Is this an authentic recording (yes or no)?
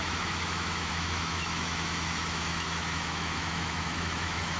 no